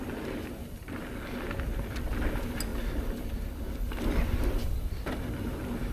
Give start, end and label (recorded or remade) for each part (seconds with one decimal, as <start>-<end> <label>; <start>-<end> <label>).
0.0-5.9 recorded